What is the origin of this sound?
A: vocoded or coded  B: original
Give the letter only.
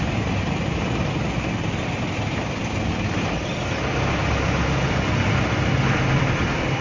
B